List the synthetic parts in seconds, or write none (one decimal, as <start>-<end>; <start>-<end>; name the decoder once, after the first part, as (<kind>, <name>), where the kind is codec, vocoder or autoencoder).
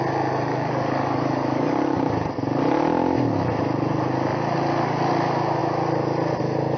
0.5-2.0 (codec, DAC)